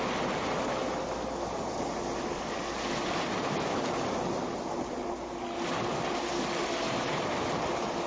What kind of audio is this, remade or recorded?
recorded